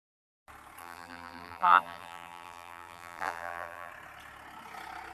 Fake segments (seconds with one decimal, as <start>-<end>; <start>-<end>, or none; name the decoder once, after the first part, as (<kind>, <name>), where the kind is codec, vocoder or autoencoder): 0.8-3.9 (vocoder, BigVGAN v2)